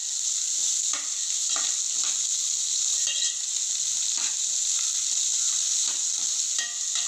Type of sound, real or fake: real